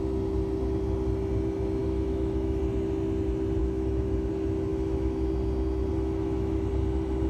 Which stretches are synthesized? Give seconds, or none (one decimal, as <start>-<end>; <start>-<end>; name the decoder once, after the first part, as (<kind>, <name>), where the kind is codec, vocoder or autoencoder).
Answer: 1.8-2.6 (autoencoder, DAC-VAE); 3.6-4.3; 4.7-5.3; 5.9-6.7